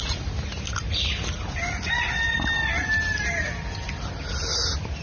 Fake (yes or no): no